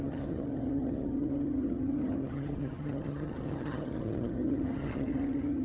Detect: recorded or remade remade